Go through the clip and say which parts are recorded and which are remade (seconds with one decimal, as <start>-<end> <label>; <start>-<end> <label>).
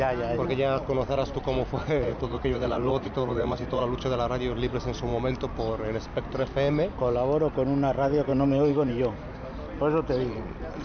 0.0-1.8 recorded; 1.8-3.8 remade; 3.8-8.3 recorded; 8.3-8.9 remade; 8.9-10.8 recorded